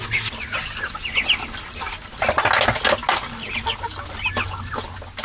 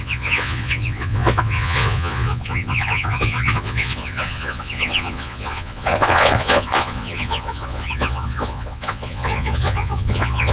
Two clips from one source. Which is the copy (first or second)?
second